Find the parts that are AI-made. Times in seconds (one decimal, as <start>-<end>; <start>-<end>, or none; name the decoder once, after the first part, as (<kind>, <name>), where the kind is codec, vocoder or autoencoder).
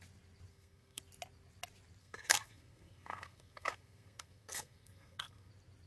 0.5-1.0 (codec, SNAC); 2.0-5.5